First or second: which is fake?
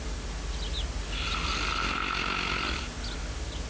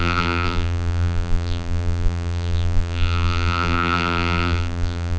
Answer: second